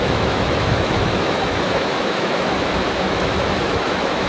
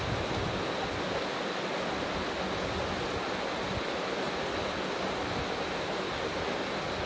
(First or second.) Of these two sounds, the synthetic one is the first